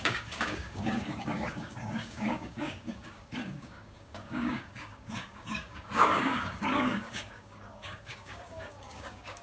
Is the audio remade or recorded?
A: remade